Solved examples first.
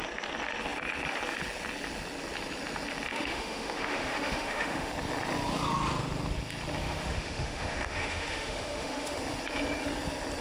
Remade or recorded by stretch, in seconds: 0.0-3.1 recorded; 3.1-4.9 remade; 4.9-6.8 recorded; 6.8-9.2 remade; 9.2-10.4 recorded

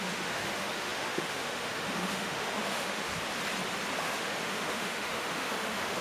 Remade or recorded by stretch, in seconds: 0.0-3.1 remade; 3.1-4.0 recorded; 4.0-6.0 remade

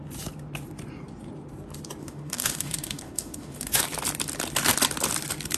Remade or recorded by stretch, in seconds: 0.0-2.0 recorded; 2.0-3.8 remade; 3.8-5.6 recorded

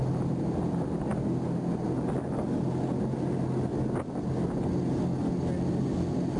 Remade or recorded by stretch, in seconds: 0.0-6.4 recorded